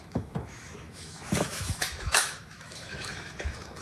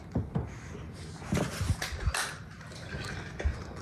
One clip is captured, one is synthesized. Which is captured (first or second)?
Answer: second